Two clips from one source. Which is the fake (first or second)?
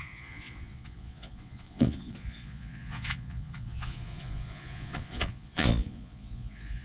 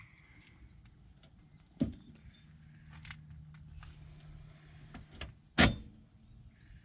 first